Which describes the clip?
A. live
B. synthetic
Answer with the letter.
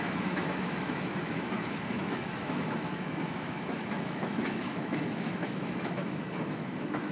B